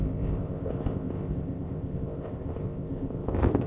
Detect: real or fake fake